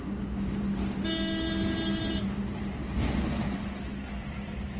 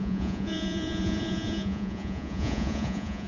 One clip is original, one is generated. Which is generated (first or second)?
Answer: second